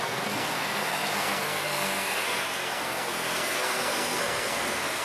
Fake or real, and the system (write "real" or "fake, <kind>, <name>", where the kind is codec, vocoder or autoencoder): fake, codec, SNAC